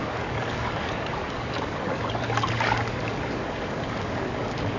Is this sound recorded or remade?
remade